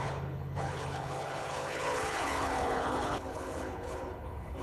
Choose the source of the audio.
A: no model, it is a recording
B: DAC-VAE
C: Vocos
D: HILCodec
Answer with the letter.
D